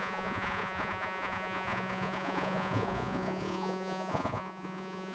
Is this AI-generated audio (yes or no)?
yes